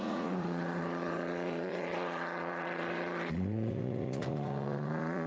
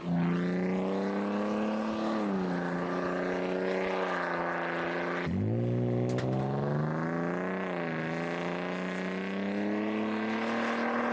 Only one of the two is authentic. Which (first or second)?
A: second